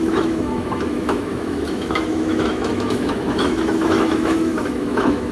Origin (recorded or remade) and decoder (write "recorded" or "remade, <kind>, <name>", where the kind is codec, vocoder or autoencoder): remade, autoencoder, DAC-VAE